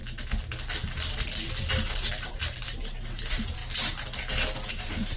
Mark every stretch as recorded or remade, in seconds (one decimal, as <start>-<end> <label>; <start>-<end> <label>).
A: 0.0-2.3 recorded; 2.3-3.6 remade; 3.6-4.7 recorded; 4.7-5.2 remade